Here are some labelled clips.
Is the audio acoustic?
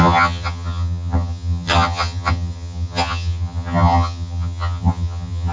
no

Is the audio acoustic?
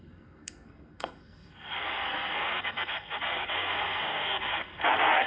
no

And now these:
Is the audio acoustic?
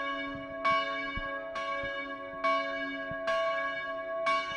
yes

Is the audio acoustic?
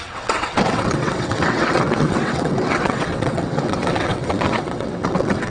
no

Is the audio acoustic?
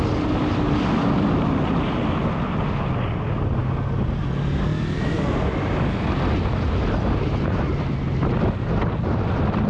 yes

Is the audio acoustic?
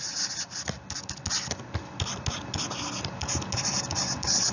yes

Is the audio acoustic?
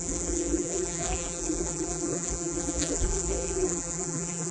no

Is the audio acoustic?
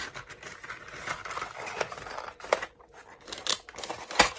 yes